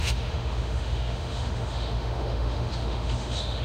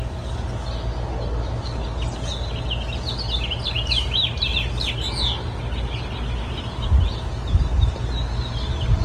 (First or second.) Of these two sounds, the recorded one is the second